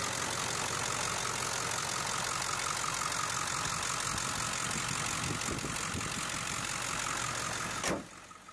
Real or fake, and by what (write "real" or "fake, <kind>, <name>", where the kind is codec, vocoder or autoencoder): real